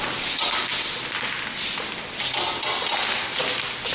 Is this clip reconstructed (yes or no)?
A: no